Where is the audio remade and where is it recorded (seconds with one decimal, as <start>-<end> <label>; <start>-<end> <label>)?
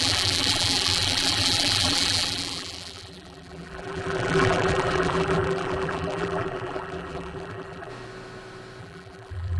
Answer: 0.0-7.9 remade; 7.9-8.8 recorded; 8.8-9.6 remade